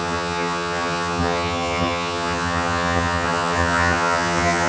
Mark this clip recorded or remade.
remade